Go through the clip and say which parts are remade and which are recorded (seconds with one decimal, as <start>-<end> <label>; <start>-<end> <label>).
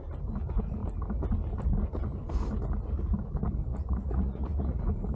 0.0-3.7 recorded; 3.7-4.8 remade; 4.8-5.2 recorded